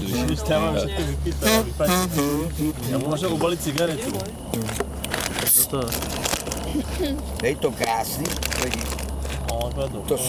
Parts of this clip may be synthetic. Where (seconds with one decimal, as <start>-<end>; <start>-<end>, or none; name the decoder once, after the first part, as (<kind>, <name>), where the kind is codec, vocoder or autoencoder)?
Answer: 2.3-4.1 (vocoder, BigVGAN v2); 6.7-8.3